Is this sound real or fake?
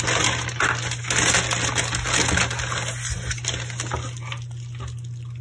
real